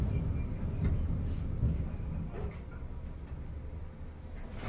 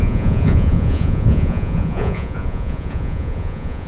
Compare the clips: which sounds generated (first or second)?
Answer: second